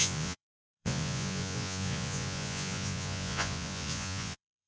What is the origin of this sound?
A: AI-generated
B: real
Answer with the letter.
A